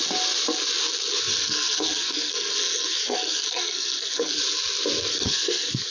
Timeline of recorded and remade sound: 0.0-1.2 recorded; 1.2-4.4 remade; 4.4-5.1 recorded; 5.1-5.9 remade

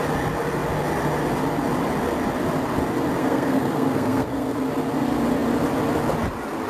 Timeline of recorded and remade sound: 0.0-3.2 recorded; 3.2-4.7 remade; 4.7-6.7 recorded

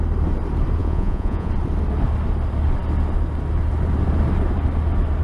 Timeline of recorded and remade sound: 0.0-0.8 recorded; 0.8-1.5 remade; 1.5-5.2 recorded

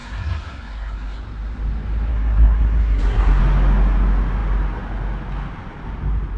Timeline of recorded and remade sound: 0.0-1.2 remade; 1.2-2.1 recorded; 2.1-3.4 remade; 3.4-6.4 recorded

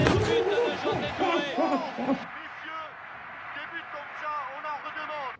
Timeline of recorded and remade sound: 0.0-5.4 recorded